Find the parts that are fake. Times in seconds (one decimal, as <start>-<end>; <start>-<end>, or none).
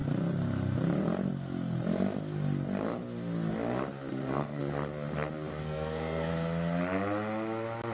4.1-4.6; 5.6-6.3